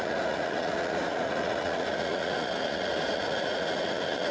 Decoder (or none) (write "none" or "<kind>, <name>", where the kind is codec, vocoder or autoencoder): vocoder, Vocos